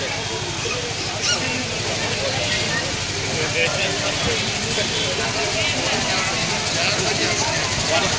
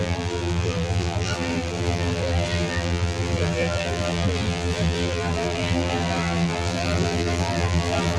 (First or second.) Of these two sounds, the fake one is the second